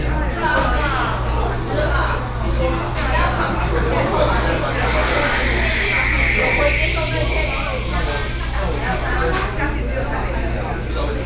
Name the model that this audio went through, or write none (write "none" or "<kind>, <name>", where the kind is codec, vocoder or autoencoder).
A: none